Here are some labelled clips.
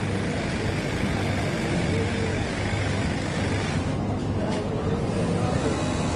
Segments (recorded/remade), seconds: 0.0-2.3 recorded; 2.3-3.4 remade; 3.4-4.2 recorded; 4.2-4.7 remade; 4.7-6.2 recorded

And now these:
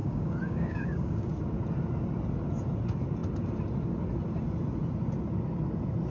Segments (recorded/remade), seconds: 0.0-1.3 remade; 1.3-6.1 recorded

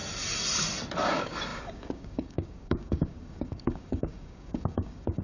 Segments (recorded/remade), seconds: 0.0-1.0 recorded; 1.0-5.2 remade

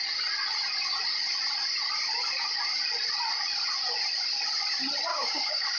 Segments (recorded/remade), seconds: 0.0-5.1 recorded; 5.1-5.8 remade

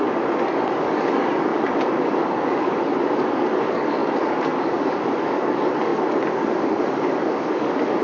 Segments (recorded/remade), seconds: 0.0-8.0 remade